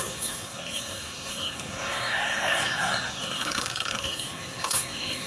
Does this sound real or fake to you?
fake